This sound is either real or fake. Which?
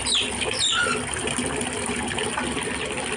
real